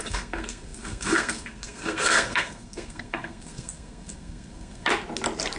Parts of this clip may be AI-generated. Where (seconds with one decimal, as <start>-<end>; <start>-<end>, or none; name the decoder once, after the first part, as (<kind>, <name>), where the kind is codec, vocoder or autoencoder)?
0.0-4.9 (codec, SNAC)